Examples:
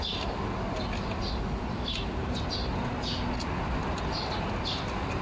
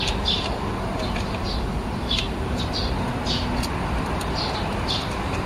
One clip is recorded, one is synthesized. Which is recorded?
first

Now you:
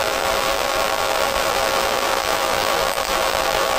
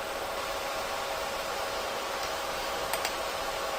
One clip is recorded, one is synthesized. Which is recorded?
second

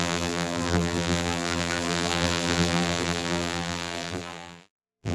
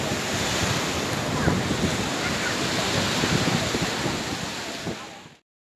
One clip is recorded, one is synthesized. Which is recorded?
second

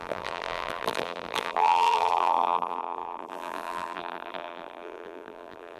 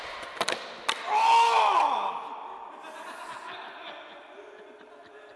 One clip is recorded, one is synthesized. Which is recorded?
second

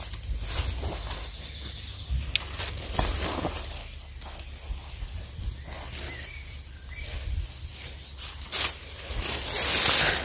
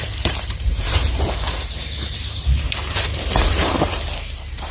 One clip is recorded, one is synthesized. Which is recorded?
first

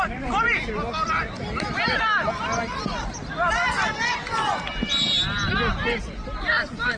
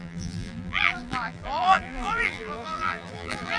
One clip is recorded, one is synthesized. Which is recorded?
first